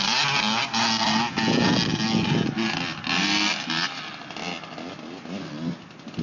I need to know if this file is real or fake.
real